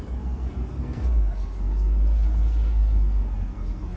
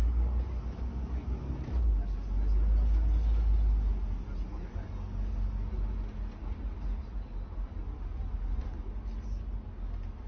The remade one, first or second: first